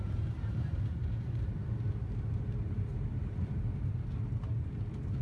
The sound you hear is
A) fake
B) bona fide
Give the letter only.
A